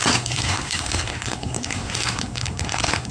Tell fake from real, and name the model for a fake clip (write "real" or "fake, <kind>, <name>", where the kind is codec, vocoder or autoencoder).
fake, codec, SNAC